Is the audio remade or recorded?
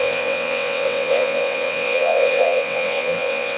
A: remade